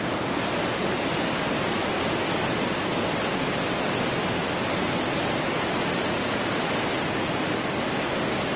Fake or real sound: real